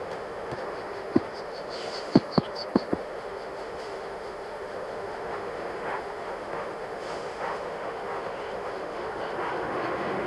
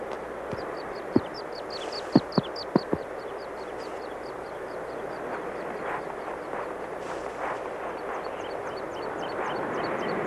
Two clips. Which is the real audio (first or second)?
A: second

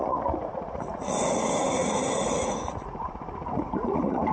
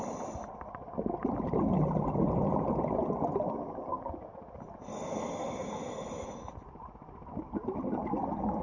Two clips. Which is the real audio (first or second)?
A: second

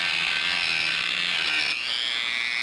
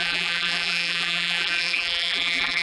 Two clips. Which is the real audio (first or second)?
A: first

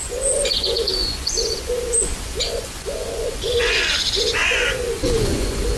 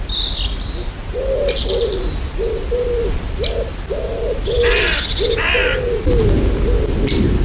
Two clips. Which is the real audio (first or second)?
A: second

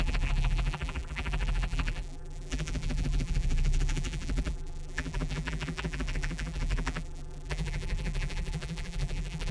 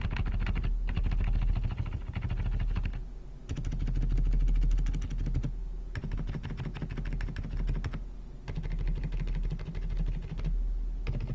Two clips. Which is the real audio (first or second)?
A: second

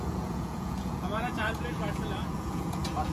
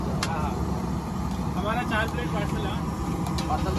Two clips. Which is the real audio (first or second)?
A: second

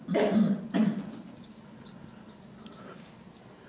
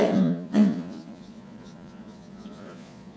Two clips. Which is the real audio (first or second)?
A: first